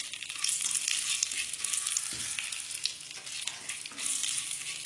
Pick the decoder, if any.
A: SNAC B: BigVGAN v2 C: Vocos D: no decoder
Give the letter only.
D